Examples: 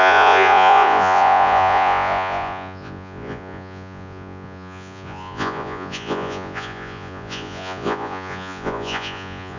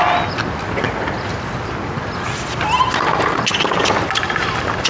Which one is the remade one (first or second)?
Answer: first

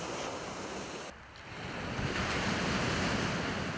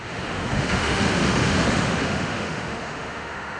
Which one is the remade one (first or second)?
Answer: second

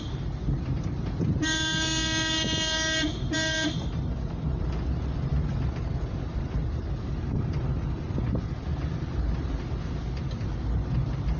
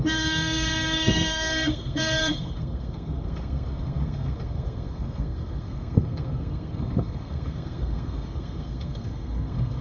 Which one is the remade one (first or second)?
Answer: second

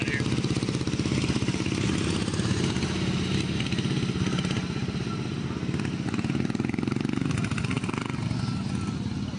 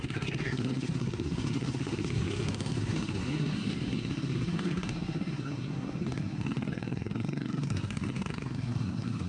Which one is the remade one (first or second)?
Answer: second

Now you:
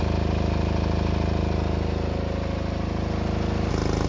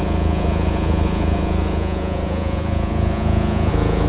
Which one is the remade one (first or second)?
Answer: second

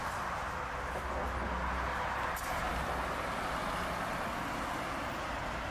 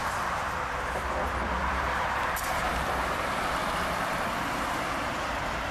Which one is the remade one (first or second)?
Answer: second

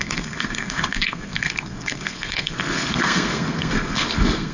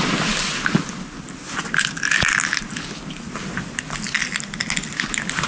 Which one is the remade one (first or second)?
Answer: first